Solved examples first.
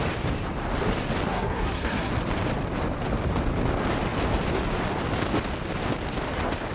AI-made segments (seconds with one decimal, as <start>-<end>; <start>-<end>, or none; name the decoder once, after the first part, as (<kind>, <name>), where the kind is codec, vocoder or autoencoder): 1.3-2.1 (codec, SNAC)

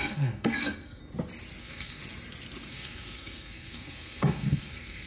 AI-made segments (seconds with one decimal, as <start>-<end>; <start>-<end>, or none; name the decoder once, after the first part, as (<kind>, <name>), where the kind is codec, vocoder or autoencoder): 0.0-1.0 (codec, SNAC); 1.6-2.0; 2.7-5.1

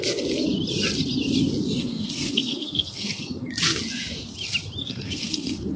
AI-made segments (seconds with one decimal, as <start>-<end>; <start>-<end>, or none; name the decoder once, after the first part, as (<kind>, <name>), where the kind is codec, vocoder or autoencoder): 1.8-3.5 (codec, SNAC); 4.8-5.8

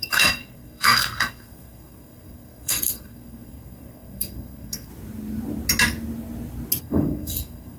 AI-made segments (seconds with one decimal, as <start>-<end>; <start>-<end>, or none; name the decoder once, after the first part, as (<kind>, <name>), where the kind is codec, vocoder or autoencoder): 0.0-4.9 (codec, SNAC); 6.8-7.8